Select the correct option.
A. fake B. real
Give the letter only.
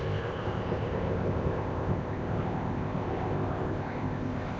A